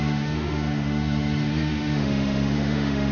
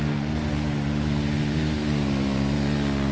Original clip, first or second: second